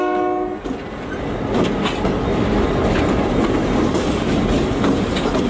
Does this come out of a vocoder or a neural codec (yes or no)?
no